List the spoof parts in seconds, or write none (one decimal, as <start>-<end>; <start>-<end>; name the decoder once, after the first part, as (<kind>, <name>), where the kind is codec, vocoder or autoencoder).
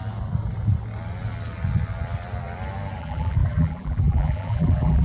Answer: 3.0-5.0 (vocoder, BigVGAN v2)